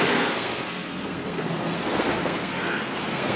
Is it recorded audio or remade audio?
remade